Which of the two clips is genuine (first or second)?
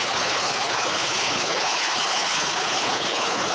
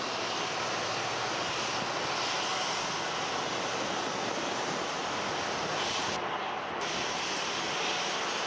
second